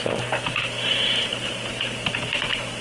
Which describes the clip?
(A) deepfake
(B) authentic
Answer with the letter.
A